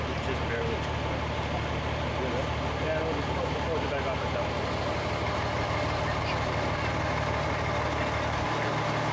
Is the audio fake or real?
real